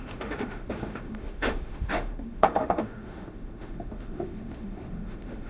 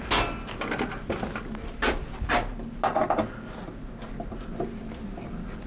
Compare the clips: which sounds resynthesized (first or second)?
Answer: first